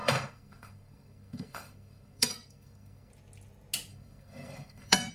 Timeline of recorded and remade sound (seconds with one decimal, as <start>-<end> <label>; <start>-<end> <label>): 0.0-3.1 remade; 3.1-3.9 recorded; 3.9-5.1 remade

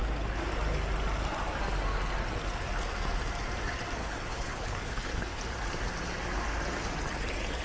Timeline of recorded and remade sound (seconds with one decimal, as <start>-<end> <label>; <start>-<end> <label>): 0.0-4.0 recorded; 4.0-5.4 remade; 5.4-7.6 recorded

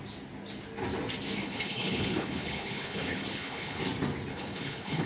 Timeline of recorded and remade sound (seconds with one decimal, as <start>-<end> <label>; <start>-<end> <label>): 0.0-1.4 recorded; 1.4-3.8 remade; 3.8-4.3 recorded; 4.3-5.1 remade

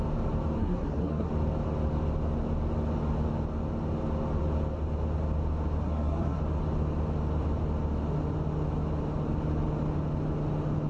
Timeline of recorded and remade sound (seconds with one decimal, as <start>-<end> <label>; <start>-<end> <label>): 0.0-0.6 recorded; 0.6-1.3 remade; 1.3-5.8 recorded; 5.8-6.4 remade; 6.4-10.9 recorded